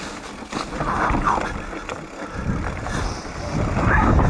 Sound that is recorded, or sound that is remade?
recorded